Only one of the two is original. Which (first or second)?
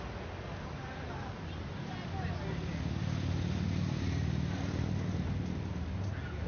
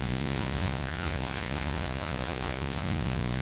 first